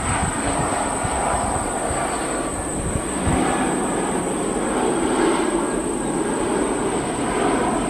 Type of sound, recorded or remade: recorded